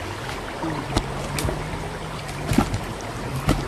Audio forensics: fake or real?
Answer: real